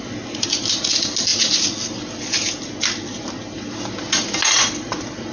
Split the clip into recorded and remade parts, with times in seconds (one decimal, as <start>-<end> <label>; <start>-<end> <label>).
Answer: 0.0-5.3 recorded

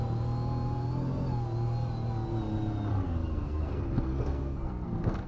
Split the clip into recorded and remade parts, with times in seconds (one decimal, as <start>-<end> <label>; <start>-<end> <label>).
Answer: 0.0-2.9 recorded; 2.9-5.3 remade

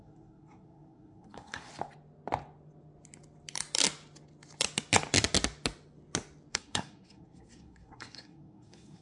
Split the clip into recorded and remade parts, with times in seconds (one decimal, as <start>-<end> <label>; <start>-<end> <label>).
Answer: 0.0-1.7 remade; 1.7-6.5 recorded; 6.5-9.0 remade

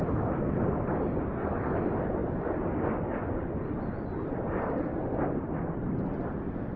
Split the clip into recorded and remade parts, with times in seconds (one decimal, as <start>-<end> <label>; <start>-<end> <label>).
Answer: 0.0-6.8 recorded

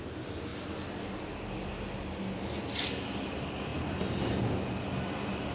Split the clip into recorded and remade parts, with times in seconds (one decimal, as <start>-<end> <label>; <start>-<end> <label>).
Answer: 0.0-5.5 recorded

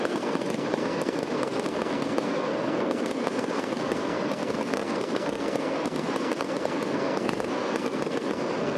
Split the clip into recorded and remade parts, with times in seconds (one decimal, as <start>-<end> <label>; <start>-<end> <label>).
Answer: 0.0-8.8 remade

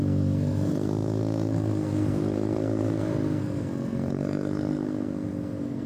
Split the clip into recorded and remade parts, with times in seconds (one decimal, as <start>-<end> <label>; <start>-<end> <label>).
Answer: 0.0-5.9 remade

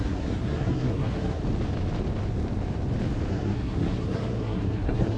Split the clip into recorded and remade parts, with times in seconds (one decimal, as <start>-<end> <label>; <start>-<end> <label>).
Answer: 0.0-1.4 remade; 1.4-3.3 recorded; 3.3-5.2 remade